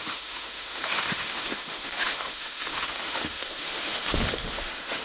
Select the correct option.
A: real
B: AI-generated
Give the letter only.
B